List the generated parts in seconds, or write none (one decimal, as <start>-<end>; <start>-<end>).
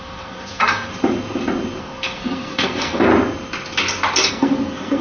0.0-0.9; 1.8-3.1; 4.3-5.0